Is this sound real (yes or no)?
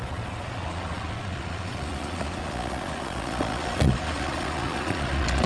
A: no